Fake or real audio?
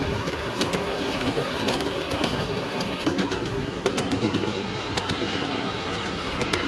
fake